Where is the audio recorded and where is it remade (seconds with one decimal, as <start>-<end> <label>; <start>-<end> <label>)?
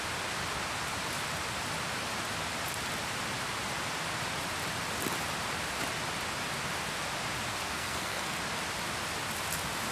0.0-7.5 recorded; 7.5-8.4 remade; 8.4-9.9 recorded